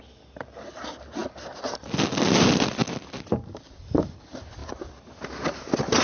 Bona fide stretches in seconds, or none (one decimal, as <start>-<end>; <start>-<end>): 0.0-2.8; 3.8-6.0